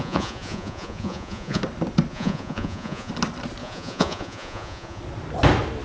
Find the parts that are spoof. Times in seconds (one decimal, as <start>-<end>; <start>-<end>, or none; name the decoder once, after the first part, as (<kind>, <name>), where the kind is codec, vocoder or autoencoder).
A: 0.0-1.6 (vocoder, Vocos); 2.1-3.1; 3.6-5.0